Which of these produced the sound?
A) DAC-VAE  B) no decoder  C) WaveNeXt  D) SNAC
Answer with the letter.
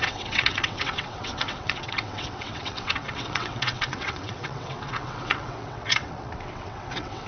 C